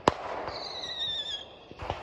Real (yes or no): yes